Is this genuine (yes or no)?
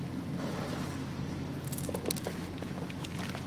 yes